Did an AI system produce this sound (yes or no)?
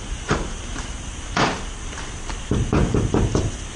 yes